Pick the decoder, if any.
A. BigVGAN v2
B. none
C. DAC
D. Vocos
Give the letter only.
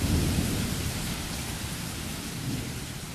B